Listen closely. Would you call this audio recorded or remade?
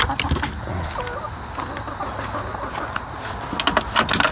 recorded